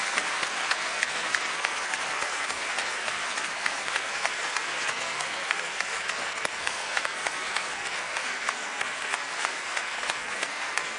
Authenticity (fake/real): fake